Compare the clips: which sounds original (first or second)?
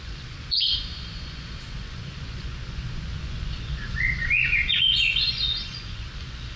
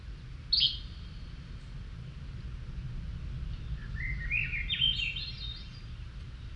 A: second